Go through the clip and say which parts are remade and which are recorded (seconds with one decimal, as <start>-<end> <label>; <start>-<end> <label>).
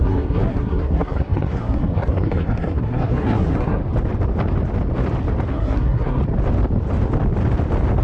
0.0-3.8 remade; 3.8-5.5 recorded; 5.5-6.2 remade; 6.2-8.0 recorded